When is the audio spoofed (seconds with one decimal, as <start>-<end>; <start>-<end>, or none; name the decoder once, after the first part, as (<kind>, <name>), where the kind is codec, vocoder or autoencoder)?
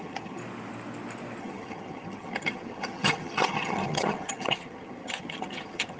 0.0-0.4 (vocoder, HiFi-GAN); 1.4-6.0